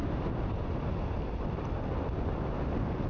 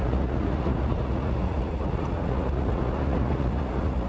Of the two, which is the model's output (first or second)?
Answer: second